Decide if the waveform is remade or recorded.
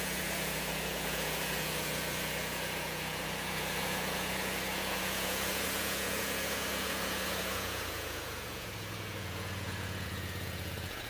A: remade